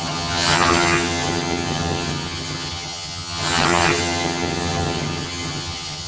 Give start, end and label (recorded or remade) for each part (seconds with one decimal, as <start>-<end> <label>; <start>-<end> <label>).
0.0-6.1 remade